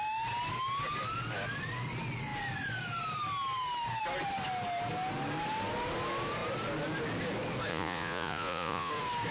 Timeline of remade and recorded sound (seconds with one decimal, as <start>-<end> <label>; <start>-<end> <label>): 0.0-7.7 recorded; 7.7-8.9 remade; 8.9-9.3 recorded